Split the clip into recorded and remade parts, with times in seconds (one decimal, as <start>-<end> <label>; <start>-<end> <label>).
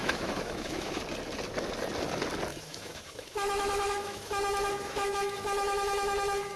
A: 0.0-1.0 remade; 1.0-2.5 recorded; 2.5-6.6 remade